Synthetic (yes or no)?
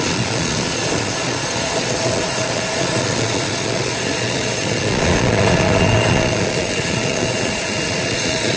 yes